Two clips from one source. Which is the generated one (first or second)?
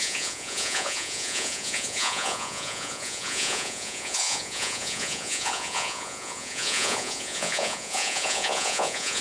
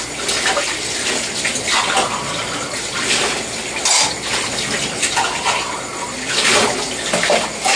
first